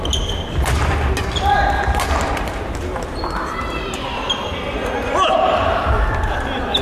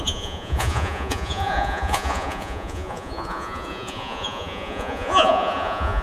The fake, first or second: second